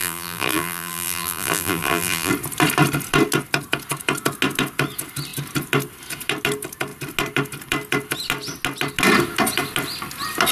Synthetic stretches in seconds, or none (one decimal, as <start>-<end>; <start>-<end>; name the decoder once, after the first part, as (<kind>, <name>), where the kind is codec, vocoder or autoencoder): 0.0-2.3 (vocoder, BigVGAN v2)